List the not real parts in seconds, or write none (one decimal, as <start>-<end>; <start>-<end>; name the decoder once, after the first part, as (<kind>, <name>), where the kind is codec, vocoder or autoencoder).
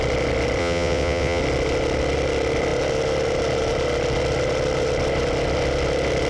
0.6-1.4 (vocoder, WaveNeXt)